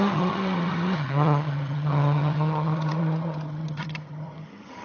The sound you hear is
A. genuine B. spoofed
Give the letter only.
B